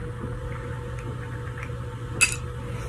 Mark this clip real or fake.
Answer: real